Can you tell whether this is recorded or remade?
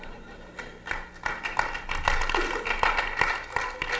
recorded